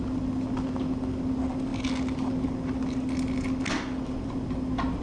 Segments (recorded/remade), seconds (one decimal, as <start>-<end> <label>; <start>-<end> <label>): 0.0-5.0 recorded